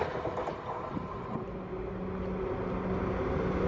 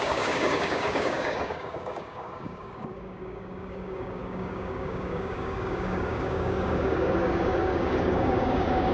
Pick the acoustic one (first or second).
first